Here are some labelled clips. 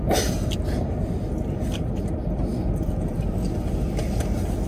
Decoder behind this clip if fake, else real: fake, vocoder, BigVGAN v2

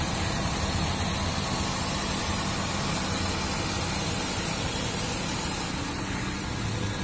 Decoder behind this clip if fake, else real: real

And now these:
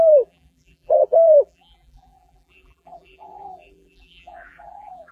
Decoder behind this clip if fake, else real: fake, vocoder, BigVGAN v2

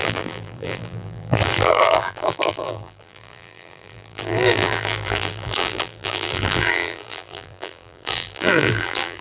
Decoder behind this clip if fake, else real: fake, vocoder, BigVGAN v2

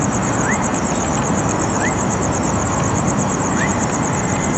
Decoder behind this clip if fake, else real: fake, vocoder, BigVGAN v2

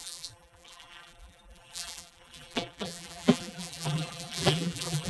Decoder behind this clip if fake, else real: fake, vocoder, BigVGAN v2